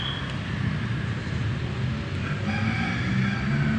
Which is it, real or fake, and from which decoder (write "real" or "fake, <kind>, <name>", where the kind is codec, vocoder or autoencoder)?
real